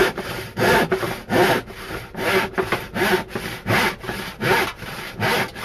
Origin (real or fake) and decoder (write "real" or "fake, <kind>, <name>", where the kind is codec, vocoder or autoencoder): real